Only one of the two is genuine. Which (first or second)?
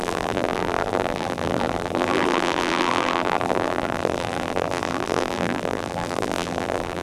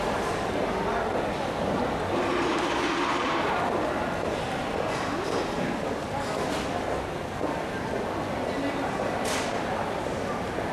second